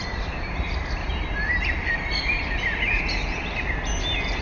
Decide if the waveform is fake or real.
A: real